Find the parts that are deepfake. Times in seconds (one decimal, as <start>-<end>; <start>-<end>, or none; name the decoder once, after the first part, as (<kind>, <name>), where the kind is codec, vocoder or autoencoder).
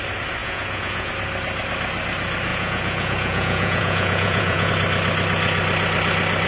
0.4-1.1 (vocoder, Vocos); 2.5-4.7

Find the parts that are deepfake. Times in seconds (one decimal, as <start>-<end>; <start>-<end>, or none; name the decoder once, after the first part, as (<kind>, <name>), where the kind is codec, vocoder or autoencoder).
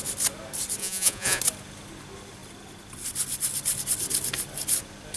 0.8-1.4 (vocoder, Vocos)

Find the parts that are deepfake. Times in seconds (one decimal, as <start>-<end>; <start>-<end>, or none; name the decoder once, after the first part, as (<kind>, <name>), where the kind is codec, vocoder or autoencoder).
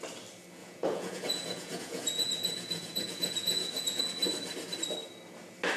0.6-4.0 (vocoder, Vocos)